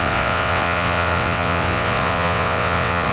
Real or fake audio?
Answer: fake